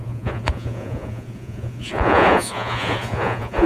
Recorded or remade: remade